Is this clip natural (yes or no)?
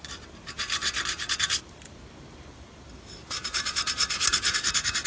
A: yes